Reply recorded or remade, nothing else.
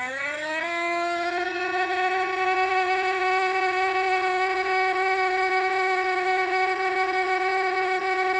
remade